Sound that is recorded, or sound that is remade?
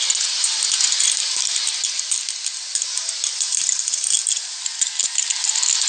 recorded